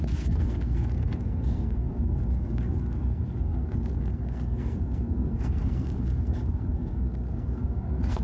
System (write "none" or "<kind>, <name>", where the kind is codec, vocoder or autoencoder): codec, SNAC